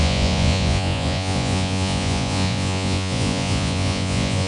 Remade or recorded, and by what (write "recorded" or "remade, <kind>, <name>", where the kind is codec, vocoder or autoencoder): remade, vocoder, Vocos